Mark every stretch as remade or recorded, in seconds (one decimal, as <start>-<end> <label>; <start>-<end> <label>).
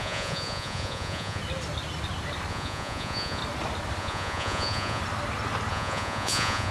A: 0.0-1.4 remade; 1.4-2.5 recorded; 2.5-3.4 remade; 3.4-4.0 recorded; 4.0-5.0 remade; 5.0-5.7 recorded; 5.7-6.7 remade